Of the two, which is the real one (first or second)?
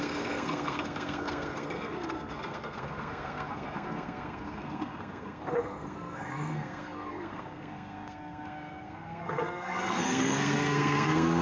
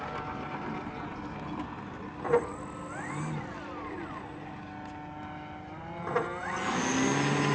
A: second